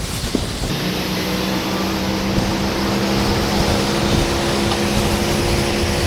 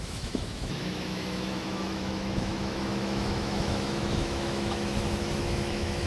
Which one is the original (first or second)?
first